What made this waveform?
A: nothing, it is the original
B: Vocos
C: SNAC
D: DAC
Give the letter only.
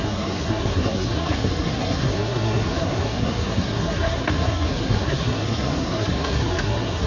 C